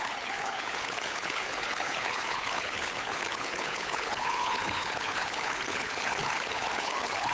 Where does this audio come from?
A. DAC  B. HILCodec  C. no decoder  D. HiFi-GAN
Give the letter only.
B